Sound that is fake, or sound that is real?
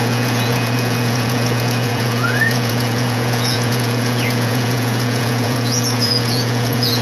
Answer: fake